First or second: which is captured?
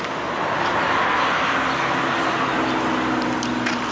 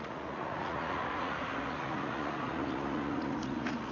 first